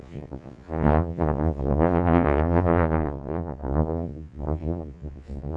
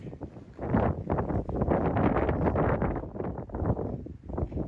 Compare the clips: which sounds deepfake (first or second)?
first